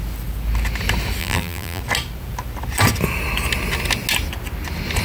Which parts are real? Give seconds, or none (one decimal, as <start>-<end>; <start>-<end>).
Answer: 0.0-1.2; 1.8-5.0